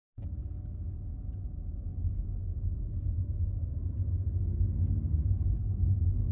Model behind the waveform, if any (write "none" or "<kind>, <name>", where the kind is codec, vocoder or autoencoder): none